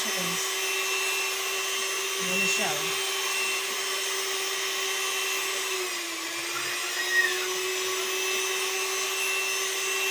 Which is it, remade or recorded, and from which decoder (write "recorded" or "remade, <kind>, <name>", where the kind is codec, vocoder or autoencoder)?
recorded